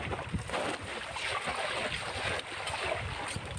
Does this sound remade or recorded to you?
recorded